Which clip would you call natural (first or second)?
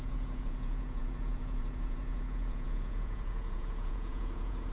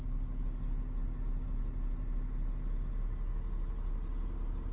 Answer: second